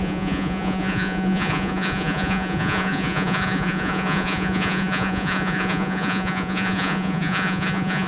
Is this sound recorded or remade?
remade